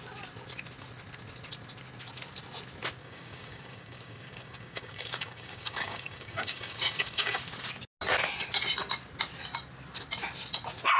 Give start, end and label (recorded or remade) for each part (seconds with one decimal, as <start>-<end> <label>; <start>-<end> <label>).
0.0-3.0 recorded; 3.0-7.4 remade; 7.4-11.0 recorded